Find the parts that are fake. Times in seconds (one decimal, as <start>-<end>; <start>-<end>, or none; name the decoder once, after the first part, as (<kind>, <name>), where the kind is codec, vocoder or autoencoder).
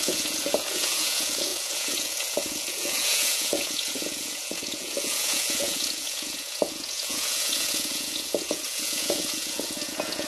0.0-10.3 (vocoder, Vocos)